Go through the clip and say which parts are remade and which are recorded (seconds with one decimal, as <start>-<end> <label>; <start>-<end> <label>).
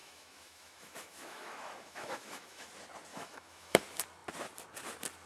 0.0-2.7 remade; 2.7-3.1 recorded; 3.1-3.8 remade; 3.8-5.3 recorded